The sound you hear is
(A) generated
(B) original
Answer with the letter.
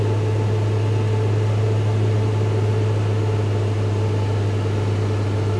B